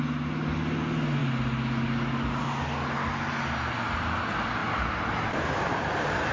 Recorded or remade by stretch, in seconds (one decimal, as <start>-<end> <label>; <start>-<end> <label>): 0.0-6.3 recorded

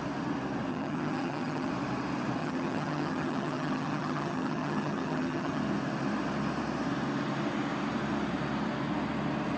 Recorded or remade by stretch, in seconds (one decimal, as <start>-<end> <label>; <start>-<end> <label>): 0.0-0.7 recorded; 0.7-1.7 remade; 1.7-2.4 recorded; 2.4-5.6 remade; 5.6-9.6 recorded

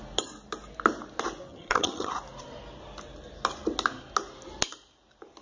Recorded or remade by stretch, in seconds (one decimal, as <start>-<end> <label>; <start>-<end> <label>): 0.0-1.5 recorded; 1.5-2.1 remade; 2.1-5.4 recorded

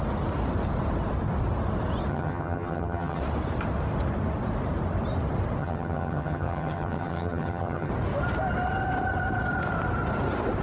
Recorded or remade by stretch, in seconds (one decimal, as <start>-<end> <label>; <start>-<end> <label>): 0.0-2.1 recorded; 2.1-3.2 remade; 3.2-5.6 recorded; 5.6-7.9 remade; 7.9-10.6 recorded